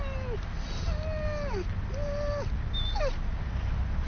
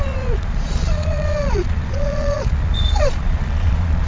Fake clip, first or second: second